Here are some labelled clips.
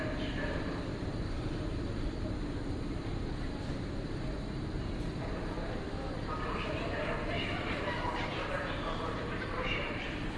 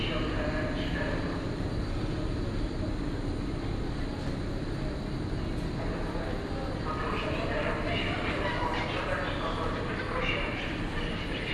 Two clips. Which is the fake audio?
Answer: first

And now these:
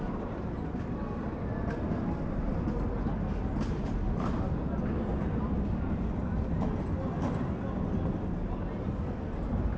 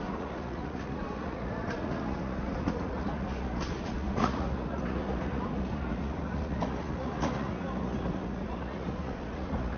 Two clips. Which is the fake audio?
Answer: second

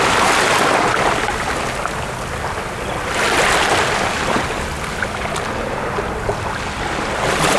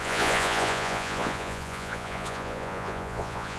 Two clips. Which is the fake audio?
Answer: second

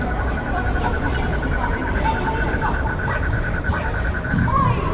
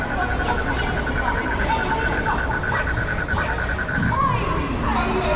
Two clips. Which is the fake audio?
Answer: first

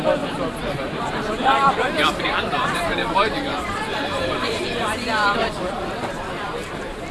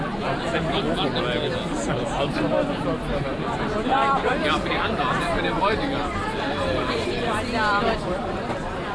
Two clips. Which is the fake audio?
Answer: first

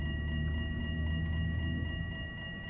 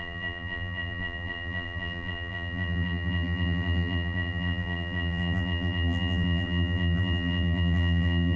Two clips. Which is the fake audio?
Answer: second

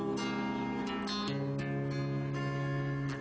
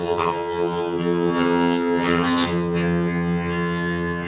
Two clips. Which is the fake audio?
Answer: second